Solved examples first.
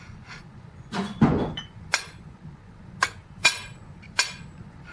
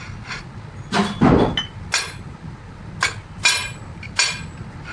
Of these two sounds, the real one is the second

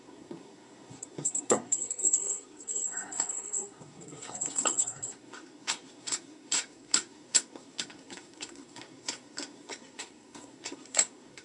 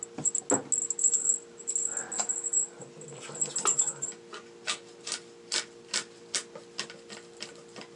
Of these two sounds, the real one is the second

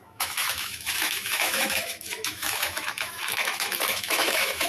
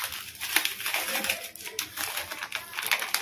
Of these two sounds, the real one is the second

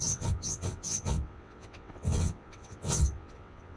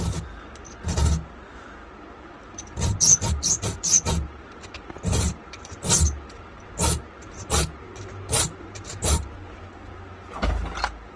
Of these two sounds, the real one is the second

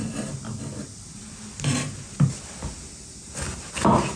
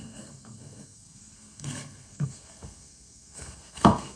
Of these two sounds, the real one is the first